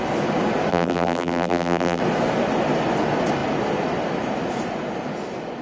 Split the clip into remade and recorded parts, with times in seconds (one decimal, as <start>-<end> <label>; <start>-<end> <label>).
0.0-0.7 recorded; 0.7-2.0 remade; 2.0-5.6 recorded